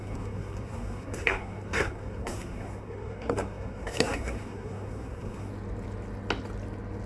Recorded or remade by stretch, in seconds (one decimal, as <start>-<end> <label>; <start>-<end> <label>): 0.0-5.5 remade; 5.5-7.1 recorded